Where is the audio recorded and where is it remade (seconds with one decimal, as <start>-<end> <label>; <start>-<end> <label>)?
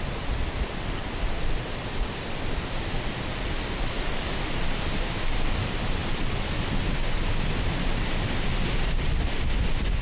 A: 0.0-10.0 recorded